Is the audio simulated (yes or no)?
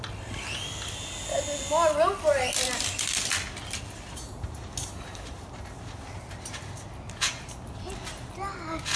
no